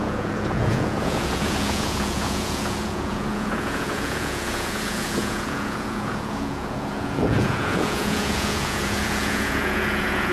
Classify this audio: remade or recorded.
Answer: remade